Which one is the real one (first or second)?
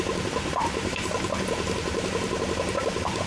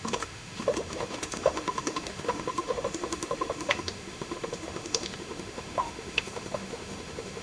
first